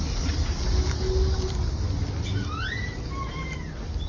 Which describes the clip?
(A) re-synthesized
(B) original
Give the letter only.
B